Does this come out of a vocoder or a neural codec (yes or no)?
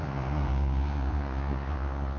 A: yes